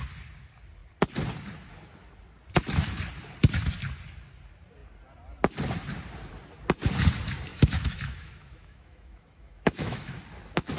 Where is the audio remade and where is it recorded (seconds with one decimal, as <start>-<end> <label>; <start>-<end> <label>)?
0.0-7.5 recorded; 7.5-10.1 remade; 10.1-10.8 recorded